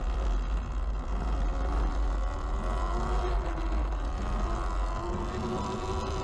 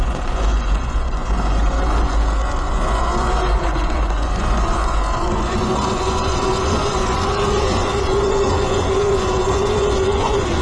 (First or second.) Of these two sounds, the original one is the first